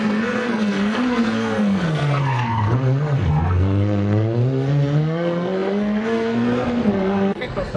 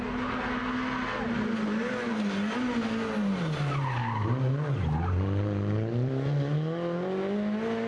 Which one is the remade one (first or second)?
first